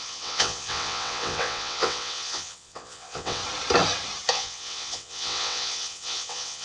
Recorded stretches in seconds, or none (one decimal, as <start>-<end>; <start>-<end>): 3.4-4.3